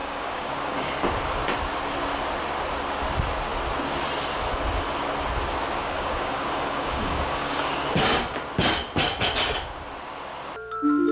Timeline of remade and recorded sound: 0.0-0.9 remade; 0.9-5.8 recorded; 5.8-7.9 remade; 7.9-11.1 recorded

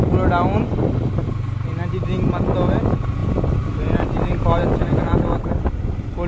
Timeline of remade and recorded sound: 0.0-6.3 recorded

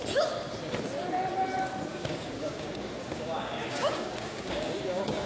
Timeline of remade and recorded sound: 0.0-1.9 recorded; 1.9-5.3 remade

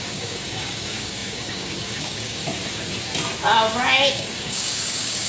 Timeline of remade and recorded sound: 0.0-2.4 remade; 2.4-4.1 recorded; 4.1-5.3 remade

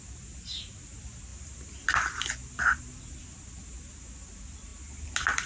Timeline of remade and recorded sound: 0.0-5.5 recorded

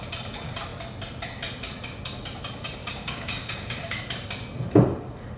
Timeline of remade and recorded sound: 0.0-2.8 recorded; 2.8-4.0 remade; 4.0-5.4 recorded

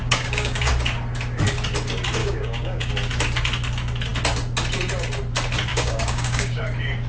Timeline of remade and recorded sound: 0.0-0.7 remade; 0.7-2.2 recorded; 2.2-2.9 remade; 2.9-5.7 recorded; 5.7-6.6 remade; 6.6-7.1 recorded

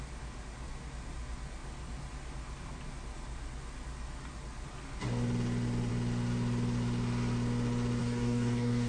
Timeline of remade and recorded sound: 0.0-8.0 recorded; 8.0-8.9 remade